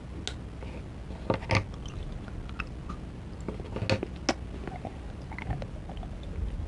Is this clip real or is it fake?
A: real